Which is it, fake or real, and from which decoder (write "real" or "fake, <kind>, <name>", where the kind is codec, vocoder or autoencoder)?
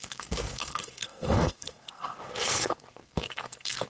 fake, codec, SNAC